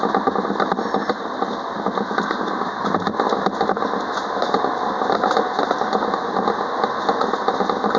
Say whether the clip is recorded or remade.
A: recorded